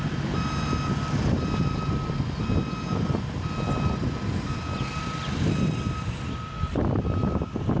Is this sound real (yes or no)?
yes